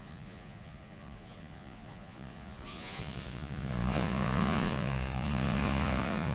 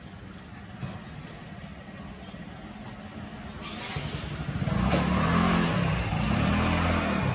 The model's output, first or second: first